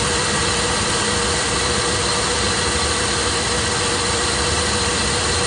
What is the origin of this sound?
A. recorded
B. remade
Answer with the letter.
A